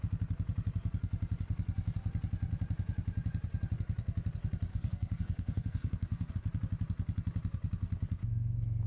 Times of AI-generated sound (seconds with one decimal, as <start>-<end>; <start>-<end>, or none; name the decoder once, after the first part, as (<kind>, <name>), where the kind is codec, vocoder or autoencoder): 4.7-6.3 (codec, SNAC); 8.2-8.9